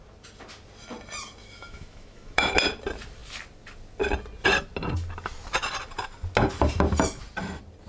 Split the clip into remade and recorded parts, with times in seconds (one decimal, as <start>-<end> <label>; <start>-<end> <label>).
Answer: 0.0-1.4 recorded; 1.4-2.5 remade; 2.5-7.9 recorded